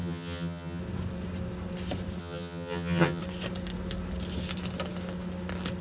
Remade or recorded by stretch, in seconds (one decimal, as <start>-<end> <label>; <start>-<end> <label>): 0.0-0.8 remade; 0.8-2.2 recorded; 2.2-3.2 remade; 3.2-5.8 recorded